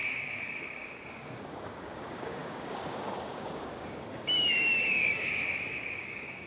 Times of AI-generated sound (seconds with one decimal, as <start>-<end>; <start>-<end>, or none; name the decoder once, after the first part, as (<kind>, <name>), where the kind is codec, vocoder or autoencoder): 0.0-6.5 (codec, DAC)